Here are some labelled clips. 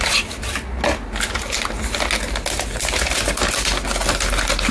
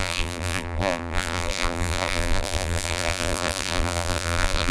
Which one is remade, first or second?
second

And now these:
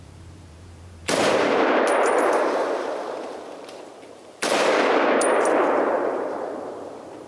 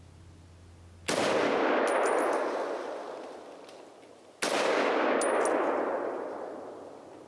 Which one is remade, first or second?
first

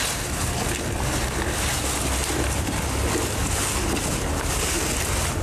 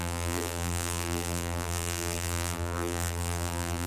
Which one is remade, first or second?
second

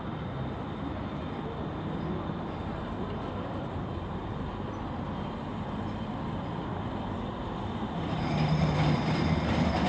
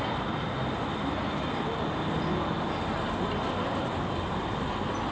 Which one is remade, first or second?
first